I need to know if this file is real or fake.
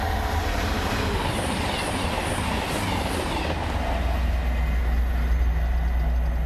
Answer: real